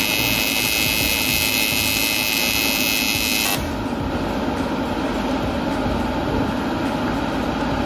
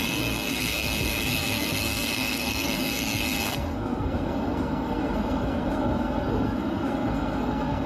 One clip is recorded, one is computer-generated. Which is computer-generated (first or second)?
second